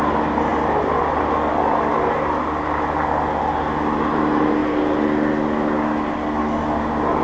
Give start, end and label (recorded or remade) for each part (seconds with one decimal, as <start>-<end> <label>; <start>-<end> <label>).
0.0-7.2 recorded